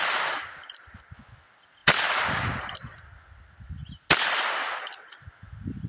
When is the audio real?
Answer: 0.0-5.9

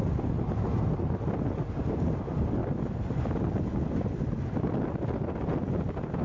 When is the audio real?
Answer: 0.0-2.6; 3.4-5.6

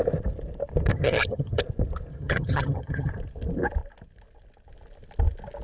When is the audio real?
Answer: 0.0-0.9; 1.6-2.1; 3.1-5.6

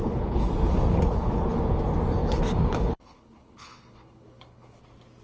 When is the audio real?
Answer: 0.5-0.9; 1.6-2.2; 4.8-5.2

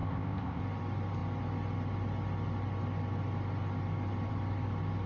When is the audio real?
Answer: 0.6-5.1